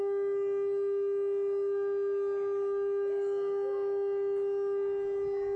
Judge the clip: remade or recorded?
recorded